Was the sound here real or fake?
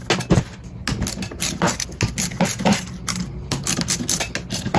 real